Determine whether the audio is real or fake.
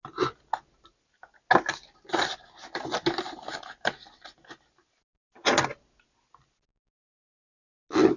real